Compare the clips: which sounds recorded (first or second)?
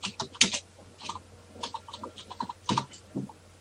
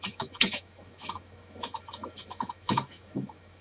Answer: first